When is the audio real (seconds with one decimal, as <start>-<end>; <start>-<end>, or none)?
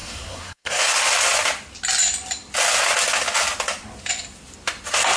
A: 0.9-5.2